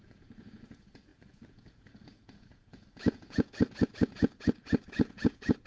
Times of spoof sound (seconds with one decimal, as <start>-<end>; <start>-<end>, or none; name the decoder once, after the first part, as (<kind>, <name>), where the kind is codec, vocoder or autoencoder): 0.0-5.7 (vocoder, Vocos)